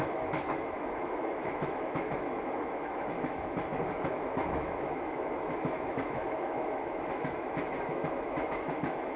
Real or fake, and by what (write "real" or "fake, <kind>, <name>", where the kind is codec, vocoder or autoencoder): fake, autoencoder, DAC-VAE